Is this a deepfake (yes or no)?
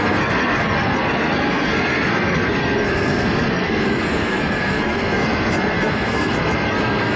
yes